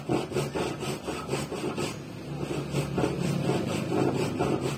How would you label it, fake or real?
real